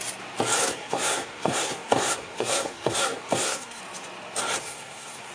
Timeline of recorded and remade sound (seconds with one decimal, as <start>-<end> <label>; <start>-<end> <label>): 0.0-0.6 recorded; 0.6-3.8 remade; 3.8-4.6 recorded; 4.6-5.3 remade